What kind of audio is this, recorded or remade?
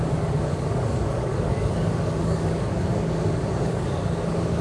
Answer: remade